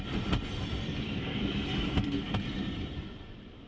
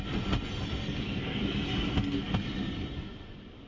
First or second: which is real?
second